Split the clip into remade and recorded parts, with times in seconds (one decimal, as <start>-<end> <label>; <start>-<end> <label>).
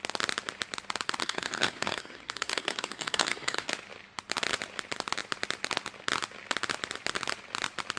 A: 0.0-1.2 recorded; 1.2-3.7 remade; 3.7-8.0 recorded